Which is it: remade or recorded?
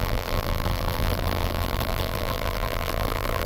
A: remade